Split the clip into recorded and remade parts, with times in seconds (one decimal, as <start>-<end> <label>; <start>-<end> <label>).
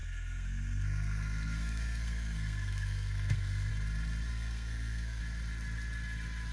0.0-3.7 remade; 3.7-4.3 recorded; 4.3-5.2 remade; 5.2-6.5 recorded